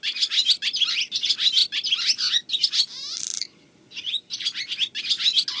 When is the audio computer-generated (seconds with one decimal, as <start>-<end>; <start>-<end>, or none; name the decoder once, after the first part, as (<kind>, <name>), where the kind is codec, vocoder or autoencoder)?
none